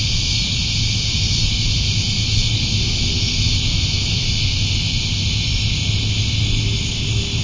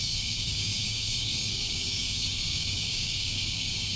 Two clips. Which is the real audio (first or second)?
first